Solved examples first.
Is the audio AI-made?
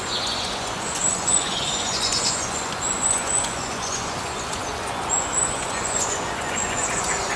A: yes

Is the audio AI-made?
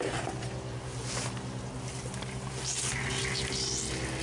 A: no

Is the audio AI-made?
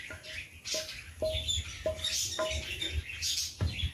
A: no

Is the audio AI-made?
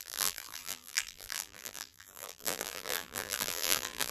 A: yes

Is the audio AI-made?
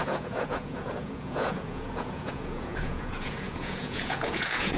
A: yes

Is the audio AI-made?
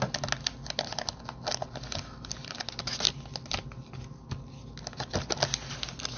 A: no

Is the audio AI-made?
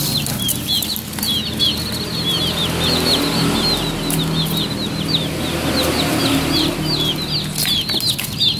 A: no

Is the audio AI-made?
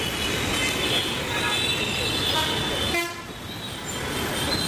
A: no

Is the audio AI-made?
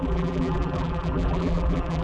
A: yes